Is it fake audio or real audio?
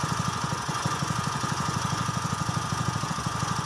fake